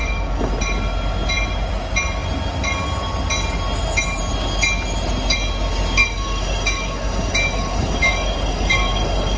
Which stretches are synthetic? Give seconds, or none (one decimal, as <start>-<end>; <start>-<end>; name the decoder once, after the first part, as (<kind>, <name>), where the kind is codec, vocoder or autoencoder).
0.0-0.5 (codec, DAC); 6.0-9.4